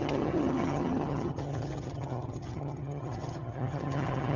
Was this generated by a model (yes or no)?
yes